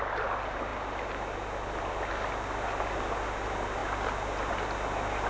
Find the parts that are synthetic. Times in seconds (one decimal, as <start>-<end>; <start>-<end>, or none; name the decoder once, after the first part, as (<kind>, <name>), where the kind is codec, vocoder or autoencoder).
none